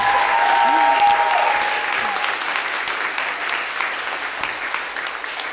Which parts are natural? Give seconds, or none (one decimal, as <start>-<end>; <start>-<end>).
0.0-5.5